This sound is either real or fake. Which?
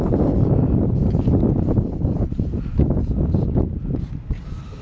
real